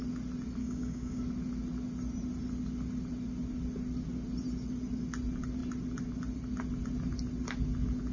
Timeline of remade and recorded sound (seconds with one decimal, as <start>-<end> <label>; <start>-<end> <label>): 0.0-0.6 recorded; 0.6-1.2 remade; 1.2-8.1 recorded